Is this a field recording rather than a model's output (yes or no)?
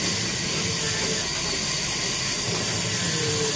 yes